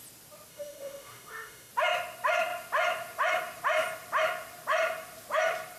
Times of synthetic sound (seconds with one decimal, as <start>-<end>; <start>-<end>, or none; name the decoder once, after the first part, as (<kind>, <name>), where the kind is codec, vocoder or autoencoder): 0.5-1.7 (autoencoder, DAC-VAE)